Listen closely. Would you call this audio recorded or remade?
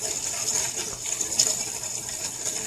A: recorded